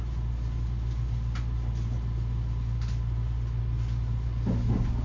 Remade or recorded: recorded